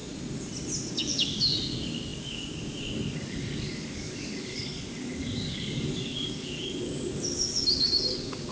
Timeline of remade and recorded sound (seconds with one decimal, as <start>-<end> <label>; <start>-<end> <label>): 0.0-0.9 recorded; 0.9-8.5 remade